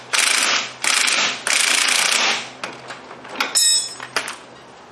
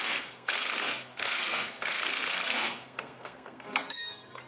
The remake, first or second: second